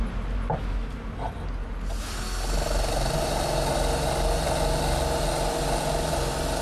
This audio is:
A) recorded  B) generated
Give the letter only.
A